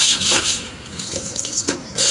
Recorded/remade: remade